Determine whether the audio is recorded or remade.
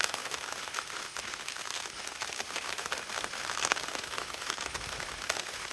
remade